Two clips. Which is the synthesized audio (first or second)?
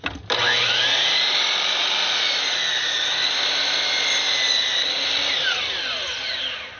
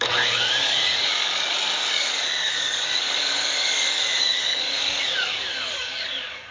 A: second